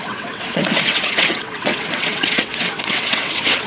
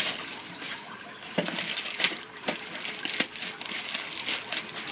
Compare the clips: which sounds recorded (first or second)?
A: second